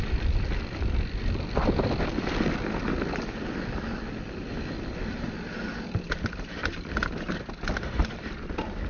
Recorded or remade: recorded